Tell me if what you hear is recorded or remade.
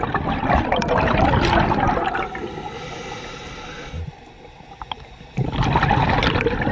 recorded